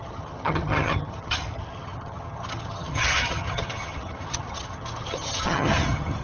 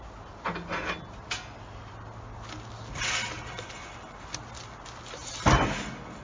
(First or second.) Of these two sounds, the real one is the second